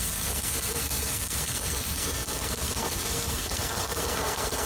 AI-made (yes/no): yes